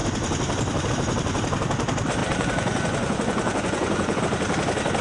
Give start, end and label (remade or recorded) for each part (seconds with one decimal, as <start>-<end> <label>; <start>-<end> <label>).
0.0-2.2 recorded; 2.2-4.2 remade; 4.2-5.0 recorded